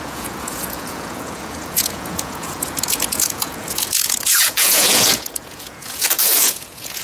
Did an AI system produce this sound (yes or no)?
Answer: yes